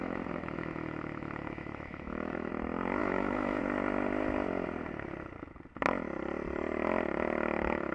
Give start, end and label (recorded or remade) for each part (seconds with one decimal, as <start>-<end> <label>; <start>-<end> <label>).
0.0-2.5 remade; 2.5-3.0 recorded; 3.0-3.6 remade; 3.6-7.9 recorded